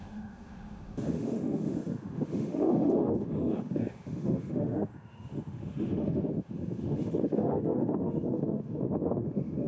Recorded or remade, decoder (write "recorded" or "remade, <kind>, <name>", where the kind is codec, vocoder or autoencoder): remade, autoencoder, DAC-VAE